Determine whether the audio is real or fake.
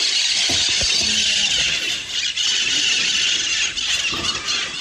real